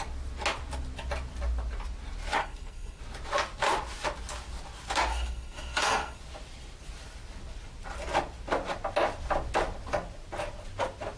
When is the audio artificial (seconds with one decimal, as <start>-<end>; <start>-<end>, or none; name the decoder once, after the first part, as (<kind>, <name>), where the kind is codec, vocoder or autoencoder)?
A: 2.4-3.0 (codec, SNAC); 5.1-6.2